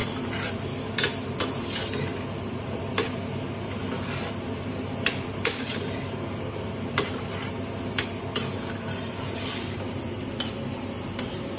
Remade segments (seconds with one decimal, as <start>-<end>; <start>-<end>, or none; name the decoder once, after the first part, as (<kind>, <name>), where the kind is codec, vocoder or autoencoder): none

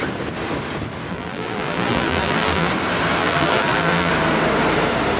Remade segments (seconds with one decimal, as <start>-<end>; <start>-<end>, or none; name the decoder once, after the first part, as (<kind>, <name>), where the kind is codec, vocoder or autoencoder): 1.1-2.7 (vocoder, BigVGAN v2); 3.2-4.1

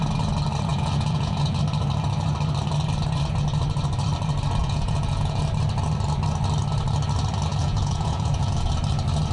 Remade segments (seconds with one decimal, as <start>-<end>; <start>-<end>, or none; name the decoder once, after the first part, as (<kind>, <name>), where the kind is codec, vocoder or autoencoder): 0.7-1.6 (vocoder, Vocos); 4.6-5.4; 7.5-8.7

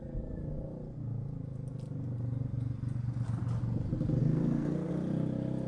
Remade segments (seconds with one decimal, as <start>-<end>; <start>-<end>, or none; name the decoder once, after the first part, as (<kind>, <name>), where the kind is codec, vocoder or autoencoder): 4.2-4.9 (codec, SNAC)